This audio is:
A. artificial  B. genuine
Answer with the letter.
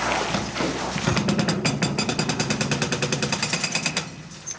B